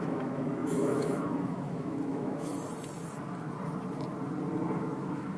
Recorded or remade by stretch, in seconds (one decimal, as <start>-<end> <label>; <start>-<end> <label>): 0.0-2.5 remade; 2.5-4.8 recorded; 4.8-5.4 remade